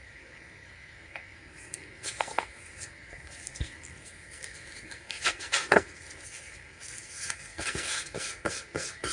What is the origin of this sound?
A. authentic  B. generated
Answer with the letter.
B